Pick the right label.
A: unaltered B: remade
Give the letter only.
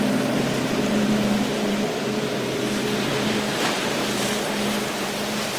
B